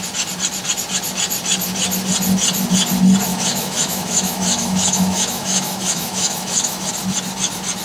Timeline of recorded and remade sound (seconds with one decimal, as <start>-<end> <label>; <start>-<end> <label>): 0.0-3.3 recorded; 3.3-6.9 remade; 6.9-7.8 recorded